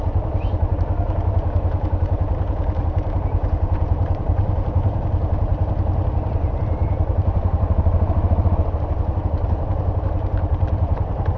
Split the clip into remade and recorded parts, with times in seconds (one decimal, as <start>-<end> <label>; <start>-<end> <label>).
0.0-5.5 remade; 5.5-6.3 recorded; 6.3-11.4 remade